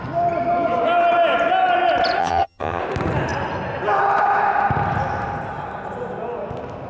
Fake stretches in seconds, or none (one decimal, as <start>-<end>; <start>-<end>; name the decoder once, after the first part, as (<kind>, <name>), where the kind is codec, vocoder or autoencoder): 2.2-2.8 (vocoder, HiFi-GAN)